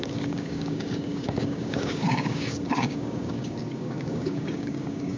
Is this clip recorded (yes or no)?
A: no